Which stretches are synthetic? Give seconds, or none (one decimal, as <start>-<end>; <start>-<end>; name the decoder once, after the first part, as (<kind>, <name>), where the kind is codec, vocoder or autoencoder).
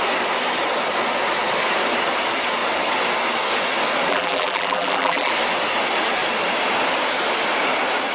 4.1-5.3 (vocoder, BigVGAN v2)